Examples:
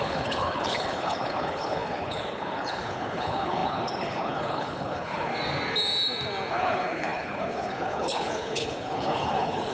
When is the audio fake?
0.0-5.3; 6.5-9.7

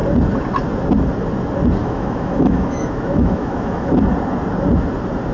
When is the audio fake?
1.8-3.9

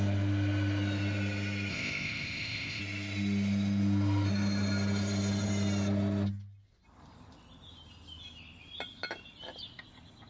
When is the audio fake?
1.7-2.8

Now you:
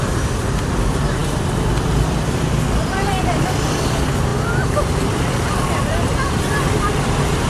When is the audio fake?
none

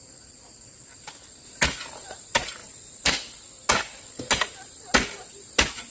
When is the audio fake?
none

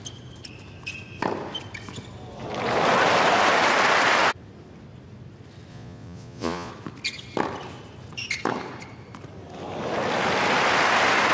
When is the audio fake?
5.7-6.7